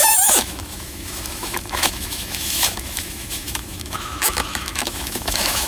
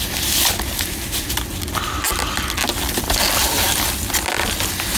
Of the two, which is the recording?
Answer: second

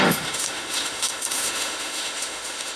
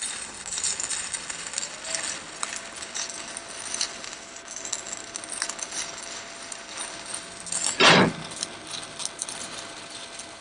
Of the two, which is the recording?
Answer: second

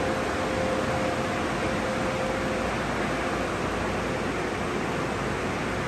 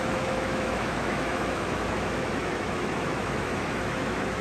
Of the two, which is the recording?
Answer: first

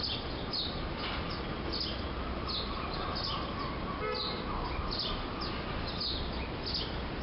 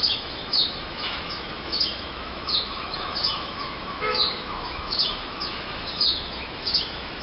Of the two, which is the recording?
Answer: first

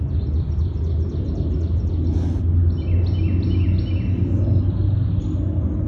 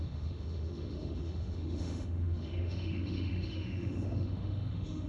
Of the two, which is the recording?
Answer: first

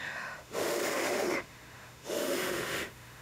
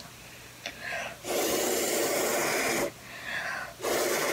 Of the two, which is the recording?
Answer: second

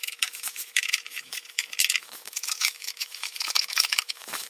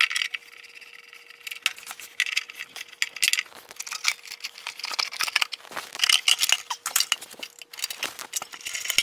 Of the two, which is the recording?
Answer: second